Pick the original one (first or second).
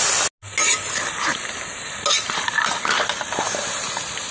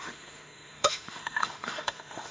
first